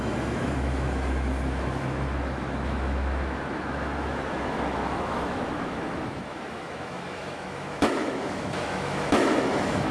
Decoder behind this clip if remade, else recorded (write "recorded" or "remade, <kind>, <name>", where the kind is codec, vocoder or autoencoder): remade, autoencoder, DAC-VAE